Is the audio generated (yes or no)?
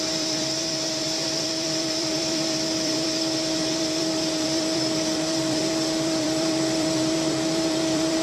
yes